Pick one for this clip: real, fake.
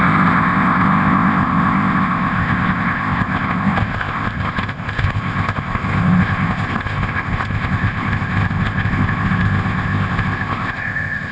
fake